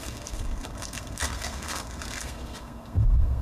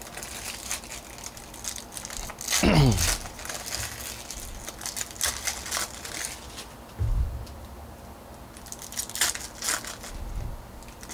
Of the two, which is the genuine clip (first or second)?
second